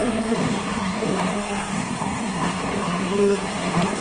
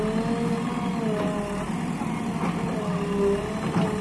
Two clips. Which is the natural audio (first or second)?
second